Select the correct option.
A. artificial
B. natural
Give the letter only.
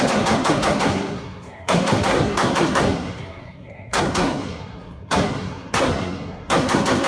A